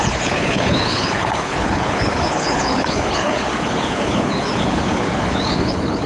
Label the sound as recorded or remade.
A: remade